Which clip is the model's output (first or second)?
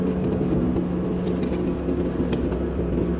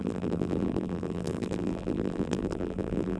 second